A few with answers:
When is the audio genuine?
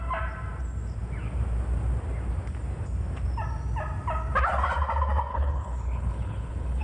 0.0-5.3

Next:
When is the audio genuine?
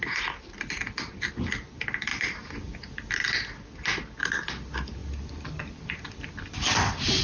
0.0-7.2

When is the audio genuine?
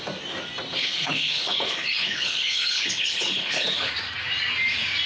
0.0-0.8; 3.9-5.1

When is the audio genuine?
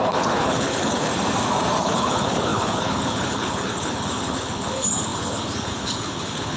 1.1-1.8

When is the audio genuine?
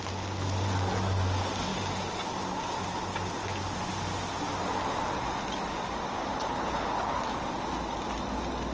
0.0-6.2; 7.2-8.7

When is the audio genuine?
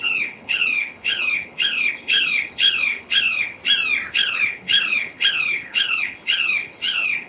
3.6-4.1